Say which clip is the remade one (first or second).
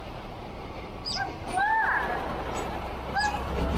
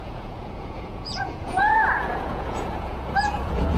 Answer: second